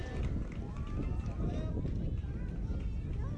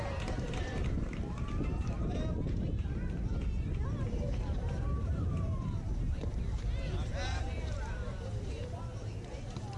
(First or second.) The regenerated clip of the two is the second